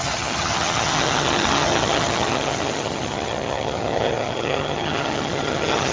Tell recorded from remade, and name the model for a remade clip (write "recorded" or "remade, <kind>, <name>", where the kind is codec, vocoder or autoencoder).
remade, vocoder, HiFi-GAN